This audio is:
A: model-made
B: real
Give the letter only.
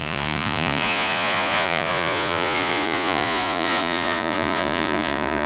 A